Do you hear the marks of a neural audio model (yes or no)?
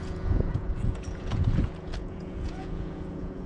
yes